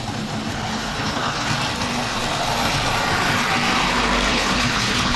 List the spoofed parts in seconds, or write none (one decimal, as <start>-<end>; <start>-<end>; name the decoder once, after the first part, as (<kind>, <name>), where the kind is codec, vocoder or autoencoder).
0.5-1.5 (codec, HILCodec); 4.3-5.2